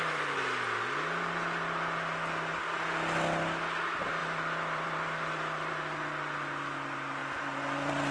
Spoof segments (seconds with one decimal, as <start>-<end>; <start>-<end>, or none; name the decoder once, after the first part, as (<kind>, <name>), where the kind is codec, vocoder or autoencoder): 4.2-5.7 (vocoder, BigVGAN v2)